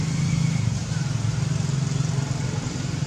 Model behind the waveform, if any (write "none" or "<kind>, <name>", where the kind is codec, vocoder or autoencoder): none